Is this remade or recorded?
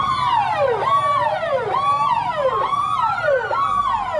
recorded